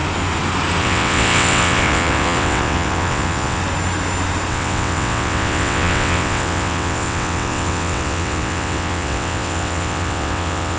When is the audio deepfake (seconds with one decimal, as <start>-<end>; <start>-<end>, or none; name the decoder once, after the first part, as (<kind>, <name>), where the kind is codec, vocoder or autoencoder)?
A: 0.8-3.6 (vocoder, WaveNeXt); 4.5-10.8